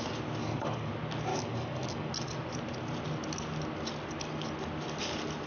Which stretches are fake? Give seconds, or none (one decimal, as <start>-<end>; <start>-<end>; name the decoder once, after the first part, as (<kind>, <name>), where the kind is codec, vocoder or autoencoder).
0.4-0.9 (codec, DAC); 1.3-2.1